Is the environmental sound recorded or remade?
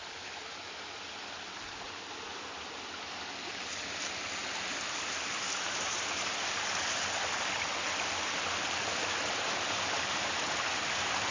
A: recorded